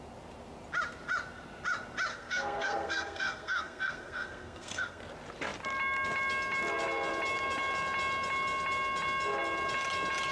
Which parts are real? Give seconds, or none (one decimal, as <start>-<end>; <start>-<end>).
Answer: 0.0-2.1; 5.0-10.3